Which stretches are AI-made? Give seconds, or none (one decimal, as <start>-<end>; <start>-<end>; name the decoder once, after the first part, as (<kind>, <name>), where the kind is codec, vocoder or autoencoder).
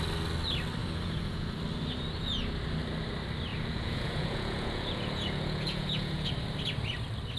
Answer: 0.8-1.6 (vocoder, Vocos); 3.5-6.3